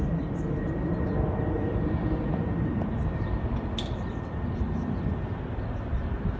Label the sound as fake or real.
real